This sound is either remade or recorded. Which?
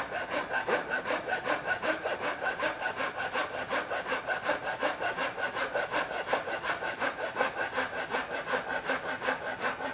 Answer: recorded